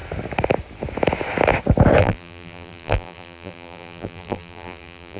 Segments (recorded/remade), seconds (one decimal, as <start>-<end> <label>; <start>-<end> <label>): 0.0-2.0 recorded; 2.0-5.2 remade